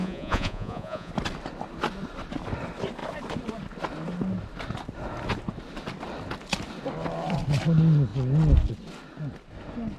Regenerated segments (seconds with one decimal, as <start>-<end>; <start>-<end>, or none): 0.0-1.1